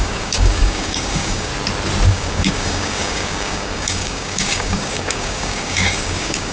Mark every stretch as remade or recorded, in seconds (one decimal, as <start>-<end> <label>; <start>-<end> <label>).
0.0-1.5 remade; 1.5-2.1 recorded; 2.1-6.5 remade